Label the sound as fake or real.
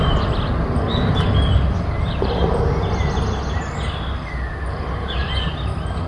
real